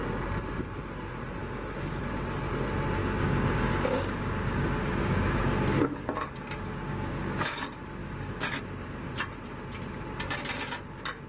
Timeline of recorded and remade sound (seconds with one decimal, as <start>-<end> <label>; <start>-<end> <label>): 0.0-1.4 recorded; 1.4-2.0 remade; 2.0-3.0 recorded; 3.0-7.6 remade; 7.6-8.0 recorded; 8.0-8.6 remade; 8.6-11.3 recorded